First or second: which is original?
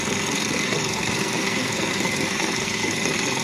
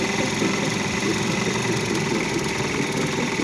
second